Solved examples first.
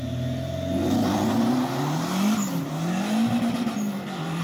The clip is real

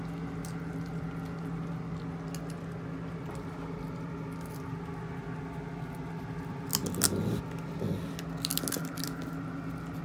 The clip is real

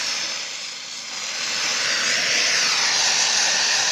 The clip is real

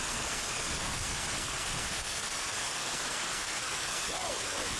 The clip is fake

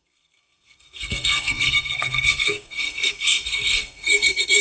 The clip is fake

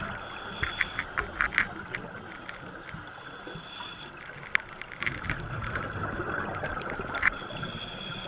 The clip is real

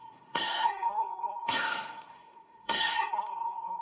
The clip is fake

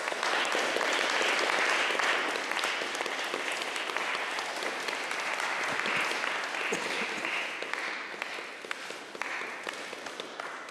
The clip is real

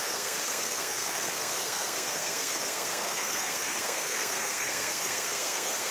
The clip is fake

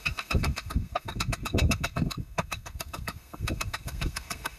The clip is fake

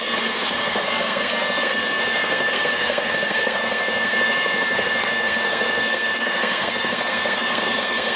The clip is fake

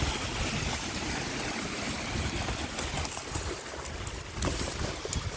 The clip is real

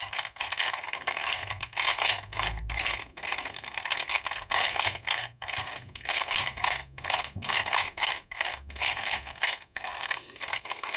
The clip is fake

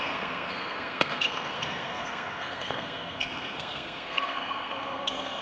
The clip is fake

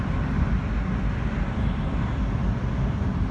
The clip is real